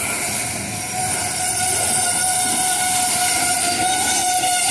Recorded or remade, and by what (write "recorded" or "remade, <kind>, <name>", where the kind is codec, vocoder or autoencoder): recorded